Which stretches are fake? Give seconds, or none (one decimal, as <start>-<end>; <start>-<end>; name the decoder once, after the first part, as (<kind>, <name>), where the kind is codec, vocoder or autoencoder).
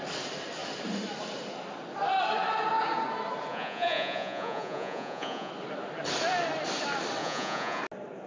3.5-5.5 (vocoder, Vocos); 7.2-7.8